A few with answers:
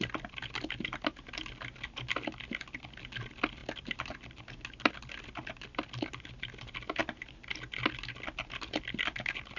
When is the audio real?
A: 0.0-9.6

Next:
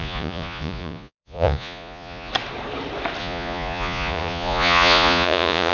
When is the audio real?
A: 2.3-3.2

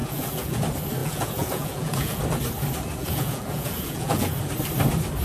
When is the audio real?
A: 0.6-1.0; 2.2-3.0; 4.4-5.2

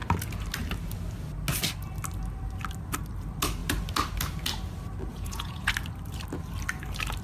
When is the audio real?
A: 0.0-5.1; 5.7-7.2